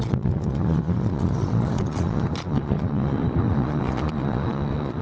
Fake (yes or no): yes